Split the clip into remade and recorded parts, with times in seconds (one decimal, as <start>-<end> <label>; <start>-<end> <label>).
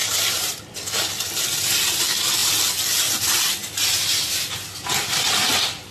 0.0-0.6 remade; 0.6-5.9 recorded